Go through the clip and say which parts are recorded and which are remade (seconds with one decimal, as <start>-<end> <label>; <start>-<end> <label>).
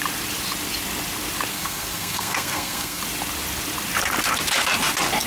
0.0-1.5 recorded; 1.5-3.0 remade; 3.0-5.3 recorded